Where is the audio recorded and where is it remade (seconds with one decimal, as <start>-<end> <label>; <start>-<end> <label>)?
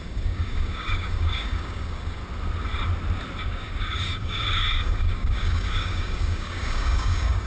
0.0-2.2 remade; 2.2-3.4 recorded; 3.4-7.5 remade